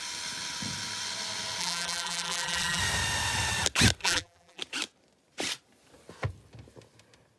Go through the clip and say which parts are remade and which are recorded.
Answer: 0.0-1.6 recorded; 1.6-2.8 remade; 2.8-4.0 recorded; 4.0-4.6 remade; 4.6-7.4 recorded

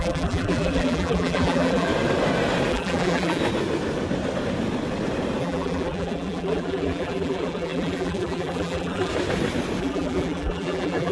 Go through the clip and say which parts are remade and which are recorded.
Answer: 0.0-1.9 remade; 1.9-2.7 recorded; 2.7-3.4 remade; 3.4-5.4 recorded; 5.4-9.1 remade; 9.1-9.8 recorded; 9.8-11.1 remade